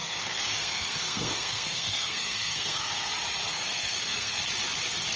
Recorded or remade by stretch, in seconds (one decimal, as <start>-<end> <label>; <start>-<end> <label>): 0.0-3.1 remade; 3.1-3.5 recorded; 3.5-4.4 remade; 4.4-5.2 recorded